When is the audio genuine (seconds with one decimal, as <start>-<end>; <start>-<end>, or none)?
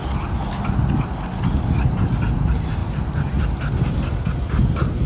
0.0-5.1